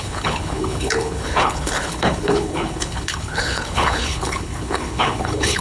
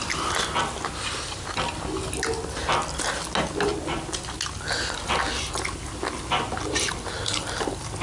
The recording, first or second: second